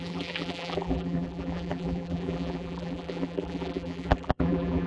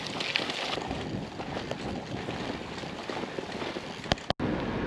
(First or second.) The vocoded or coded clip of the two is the first